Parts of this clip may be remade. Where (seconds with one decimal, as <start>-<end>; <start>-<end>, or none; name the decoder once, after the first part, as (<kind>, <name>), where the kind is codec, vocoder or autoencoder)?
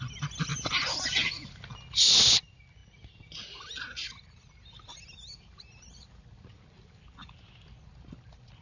none